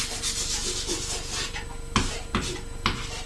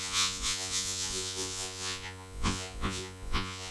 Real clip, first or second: first